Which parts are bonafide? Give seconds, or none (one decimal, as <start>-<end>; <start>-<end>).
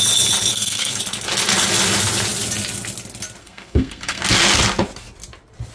0.0-0.5; 1.0-3.4; 4.2-5.7